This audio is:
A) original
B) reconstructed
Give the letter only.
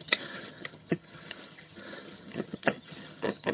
B